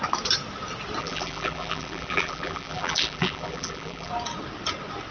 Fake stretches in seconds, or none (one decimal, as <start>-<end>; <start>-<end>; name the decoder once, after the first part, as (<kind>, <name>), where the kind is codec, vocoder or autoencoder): 1.0-4.1 (vocoder, BigVGAN v2)